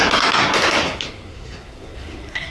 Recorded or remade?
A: remade